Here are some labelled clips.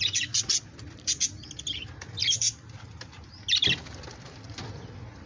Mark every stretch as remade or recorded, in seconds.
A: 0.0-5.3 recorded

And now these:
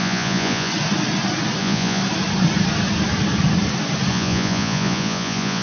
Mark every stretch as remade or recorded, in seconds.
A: 0.0-0.7 remade; 0.7-1.6 recorded; 1.6-2.0 remade; 2.0-4.1 recorded; 4.1-5.6 remade

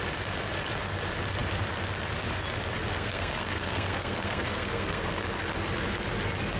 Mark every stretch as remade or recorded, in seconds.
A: 0.0-2.9 recorded; 2.9-5.1 remade; 5.1-6.6 recorded